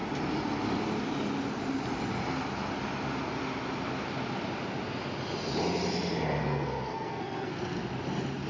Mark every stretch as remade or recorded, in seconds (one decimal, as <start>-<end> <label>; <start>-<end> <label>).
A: 0.0-6.4 recorded; 6.4-7.6 remade; 7.6-8.5 recorded

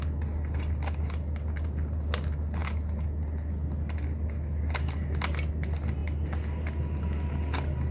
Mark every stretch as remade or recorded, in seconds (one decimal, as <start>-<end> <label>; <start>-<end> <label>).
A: 0.0-7.9 recorded